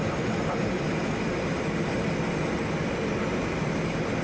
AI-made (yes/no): no